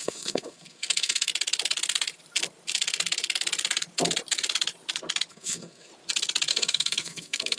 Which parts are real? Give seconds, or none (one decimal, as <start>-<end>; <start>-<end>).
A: 1.3-5.3; 5.9-6.5